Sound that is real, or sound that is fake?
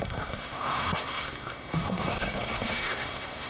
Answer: fake